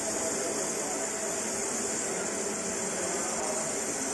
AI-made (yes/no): no